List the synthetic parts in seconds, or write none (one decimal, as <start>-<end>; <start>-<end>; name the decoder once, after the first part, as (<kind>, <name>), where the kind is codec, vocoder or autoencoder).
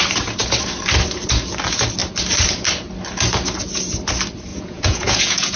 4.5-5.6 (vocoder, Vocos)